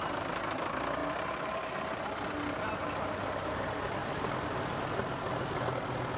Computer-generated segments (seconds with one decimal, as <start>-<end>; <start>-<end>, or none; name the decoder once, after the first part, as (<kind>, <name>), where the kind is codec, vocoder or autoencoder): 1.0-2.8 (vocoder, BigVGAN v2); 4.0-4.6